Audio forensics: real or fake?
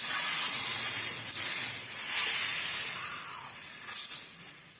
fake